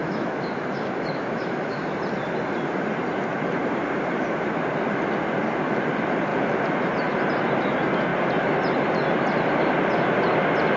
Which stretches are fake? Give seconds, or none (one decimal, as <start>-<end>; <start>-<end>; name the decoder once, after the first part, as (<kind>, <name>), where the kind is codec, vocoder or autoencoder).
0.0-2.0 (autoencoder, DAC-VAE)